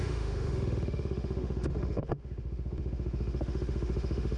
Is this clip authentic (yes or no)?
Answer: no